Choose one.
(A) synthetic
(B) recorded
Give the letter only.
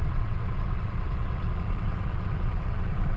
A